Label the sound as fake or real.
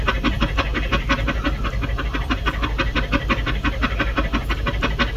real